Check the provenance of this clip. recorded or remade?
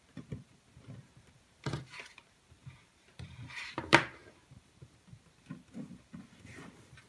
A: remade